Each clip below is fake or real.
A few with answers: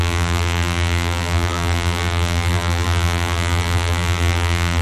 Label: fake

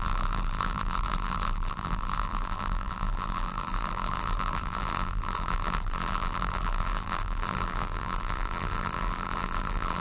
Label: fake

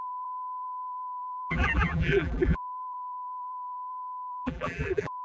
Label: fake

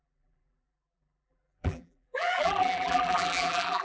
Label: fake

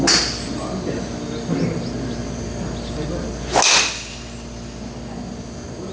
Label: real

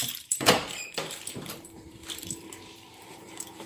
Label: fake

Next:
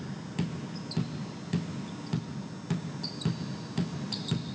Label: real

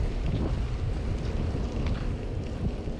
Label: real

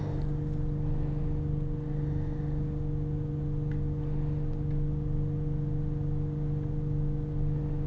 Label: real